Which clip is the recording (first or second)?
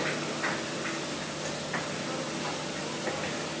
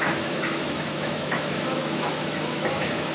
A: first